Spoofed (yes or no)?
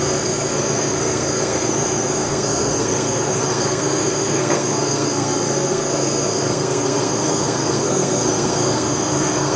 yes